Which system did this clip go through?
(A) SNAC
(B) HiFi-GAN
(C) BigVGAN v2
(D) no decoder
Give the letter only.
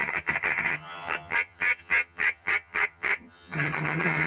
B